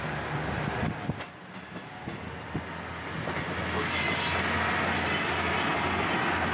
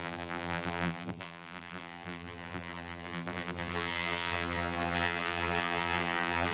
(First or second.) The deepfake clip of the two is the second